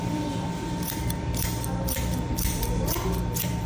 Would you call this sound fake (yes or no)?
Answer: yes